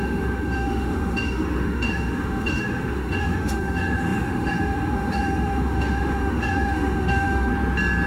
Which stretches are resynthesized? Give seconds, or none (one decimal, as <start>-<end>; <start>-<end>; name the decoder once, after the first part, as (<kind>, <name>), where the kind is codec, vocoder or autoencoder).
0.0-7.5 (autoencoder, DAC-VAE)